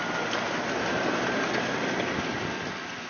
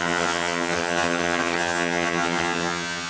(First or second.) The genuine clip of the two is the first